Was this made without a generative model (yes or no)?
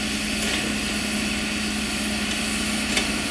yes